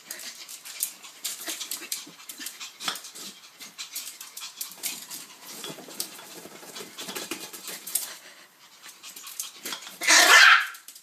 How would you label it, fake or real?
fake